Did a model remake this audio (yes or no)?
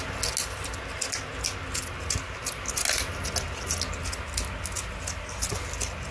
no